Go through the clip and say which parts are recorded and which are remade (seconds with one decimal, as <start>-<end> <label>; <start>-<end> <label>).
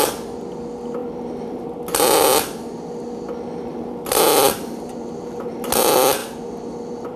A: 0.0-1.0 recorded; 1.0-1.7 remade; 1.7-3.7 recorded; 3.7-5.5 remade; 5.5-7.2 recorded